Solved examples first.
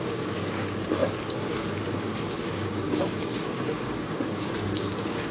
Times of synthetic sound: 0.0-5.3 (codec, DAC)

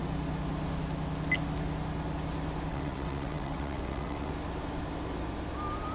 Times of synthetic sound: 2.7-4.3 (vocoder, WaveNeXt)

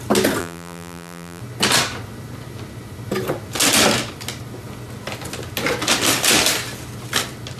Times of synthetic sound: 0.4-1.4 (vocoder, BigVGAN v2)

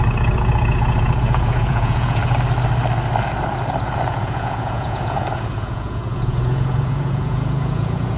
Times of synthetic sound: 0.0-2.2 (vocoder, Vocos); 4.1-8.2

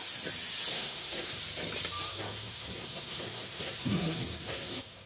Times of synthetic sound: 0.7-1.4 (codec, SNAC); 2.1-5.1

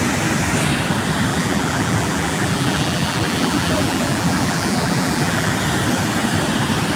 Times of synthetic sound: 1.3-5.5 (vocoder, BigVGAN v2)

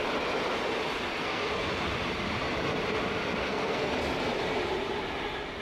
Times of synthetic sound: 1.2-1.7 (codec, SNAC); 3.4-4.0